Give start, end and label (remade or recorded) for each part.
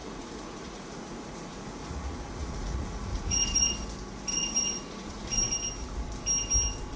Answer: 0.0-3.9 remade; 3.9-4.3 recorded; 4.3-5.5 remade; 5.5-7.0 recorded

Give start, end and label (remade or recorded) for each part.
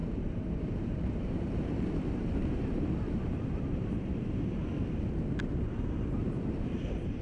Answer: 0.0-4.6 remade; 4.6-5.4 recorded; 5.4-7.2 remade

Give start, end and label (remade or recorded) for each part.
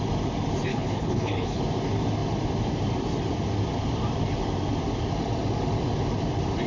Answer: 0.0-0.7 recorded; 0.7-1.6 remade; 1.6-6.7 recorded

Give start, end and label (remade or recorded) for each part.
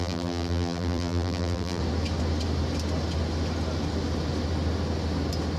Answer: 0.0-1.8 remade; 1.8-5.6 recorded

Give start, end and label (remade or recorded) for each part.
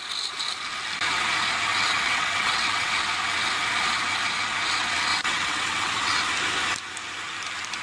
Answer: 0.0-1.7 recorded; 1.7-2.9 remade; 2.9-5.1 recorded; 5.1-6.2 remade; 6.2-7.8 recorded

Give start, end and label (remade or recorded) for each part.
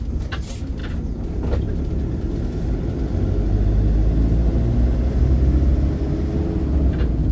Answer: 0.0-7.3 recorded